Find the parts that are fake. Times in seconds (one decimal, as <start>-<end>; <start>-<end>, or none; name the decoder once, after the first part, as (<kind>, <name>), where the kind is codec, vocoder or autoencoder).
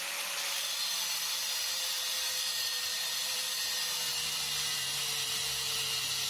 0.0-6.3 (vocoder, BigVGAN v2)